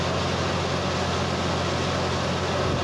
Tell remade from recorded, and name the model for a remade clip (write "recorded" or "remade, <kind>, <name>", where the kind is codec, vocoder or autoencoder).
recorded